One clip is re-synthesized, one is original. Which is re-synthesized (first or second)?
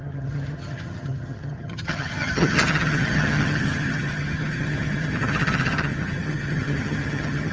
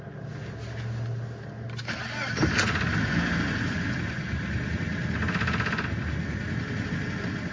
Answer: first